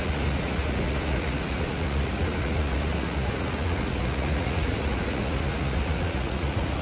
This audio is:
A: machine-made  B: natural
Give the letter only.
A